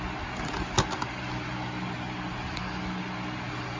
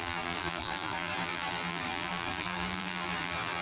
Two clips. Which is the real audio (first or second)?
first